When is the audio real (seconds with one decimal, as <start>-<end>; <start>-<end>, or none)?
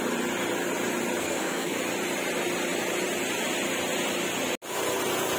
0.0-1.2; 1.8-5.4